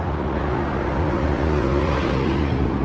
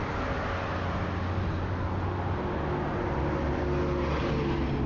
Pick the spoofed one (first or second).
first